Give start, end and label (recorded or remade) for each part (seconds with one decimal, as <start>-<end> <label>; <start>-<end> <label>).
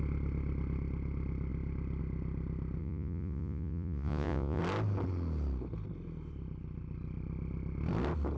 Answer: 0.0-2.8 recorded; 2.8-4.6 remade; 4.6-8.4 recorded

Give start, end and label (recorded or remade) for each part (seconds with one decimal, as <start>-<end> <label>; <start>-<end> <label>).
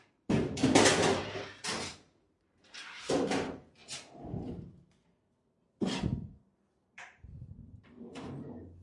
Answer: 0.0-0.6 remade; 0.6-1.2 recorded; 1.2-8.8 remade